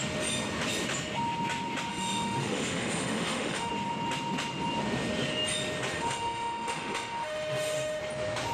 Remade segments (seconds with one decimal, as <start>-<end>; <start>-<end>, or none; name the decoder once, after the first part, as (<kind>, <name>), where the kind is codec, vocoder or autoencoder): 1.9-3.7 (autoencoder, DAC-VAE); 5.9-8.0